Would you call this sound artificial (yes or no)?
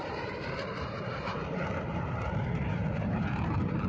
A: yes